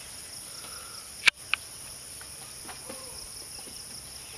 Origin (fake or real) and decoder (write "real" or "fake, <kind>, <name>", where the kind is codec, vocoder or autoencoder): real